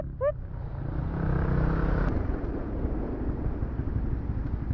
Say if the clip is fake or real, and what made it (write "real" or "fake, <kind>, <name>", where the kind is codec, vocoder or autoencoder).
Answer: real